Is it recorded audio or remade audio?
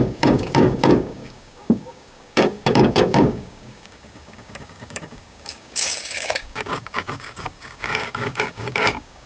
remade